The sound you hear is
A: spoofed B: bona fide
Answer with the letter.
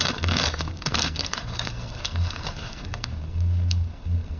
A